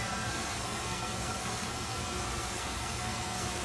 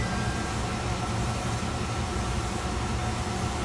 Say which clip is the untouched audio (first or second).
second